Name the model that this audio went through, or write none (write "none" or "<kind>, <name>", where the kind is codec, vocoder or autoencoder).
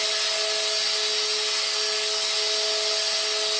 none